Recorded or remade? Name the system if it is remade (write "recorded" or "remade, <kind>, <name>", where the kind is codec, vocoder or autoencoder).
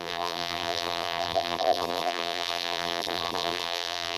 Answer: remade, vocoder, BigVGAN v2